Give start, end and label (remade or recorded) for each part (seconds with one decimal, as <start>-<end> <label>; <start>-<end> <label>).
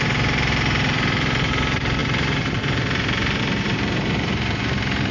0.0-5.1 remade